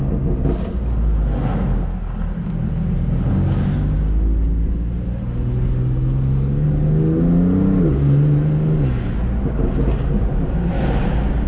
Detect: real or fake real